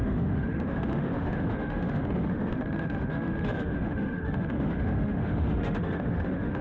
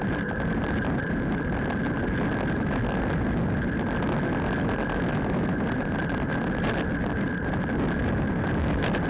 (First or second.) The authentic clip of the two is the second